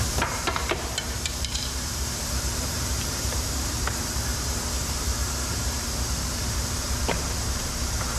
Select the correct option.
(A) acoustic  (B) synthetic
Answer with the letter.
B